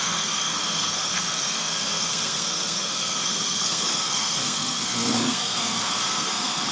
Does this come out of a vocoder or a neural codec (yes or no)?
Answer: yes